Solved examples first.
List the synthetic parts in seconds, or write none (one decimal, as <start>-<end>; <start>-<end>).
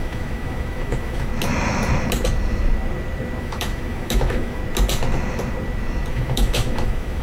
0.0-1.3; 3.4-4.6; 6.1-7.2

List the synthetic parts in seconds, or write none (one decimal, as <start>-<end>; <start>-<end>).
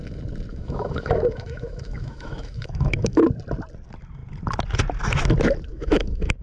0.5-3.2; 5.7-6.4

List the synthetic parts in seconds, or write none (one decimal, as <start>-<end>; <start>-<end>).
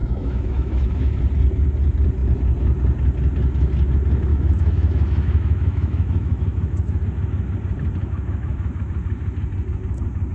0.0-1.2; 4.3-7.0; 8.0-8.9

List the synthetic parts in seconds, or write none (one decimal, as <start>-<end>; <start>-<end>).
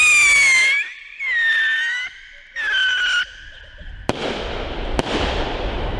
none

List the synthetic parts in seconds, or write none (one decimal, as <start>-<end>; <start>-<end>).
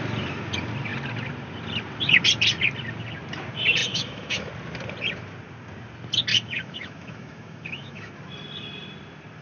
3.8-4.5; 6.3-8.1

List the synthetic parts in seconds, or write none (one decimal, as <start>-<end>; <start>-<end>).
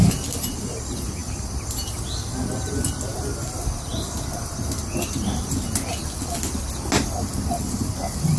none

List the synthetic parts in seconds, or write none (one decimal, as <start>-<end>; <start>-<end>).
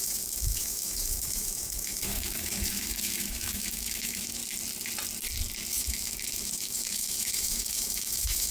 0.0-4.4; 5.7-8.5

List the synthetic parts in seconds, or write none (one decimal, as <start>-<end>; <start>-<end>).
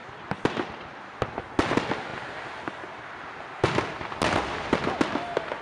none